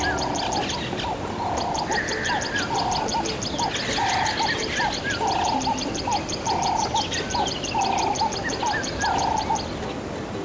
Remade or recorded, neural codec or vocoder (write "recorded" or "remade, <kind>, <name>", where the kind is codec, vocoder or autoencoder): recorded